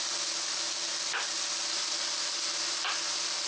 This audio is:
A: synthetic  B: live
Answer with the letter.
B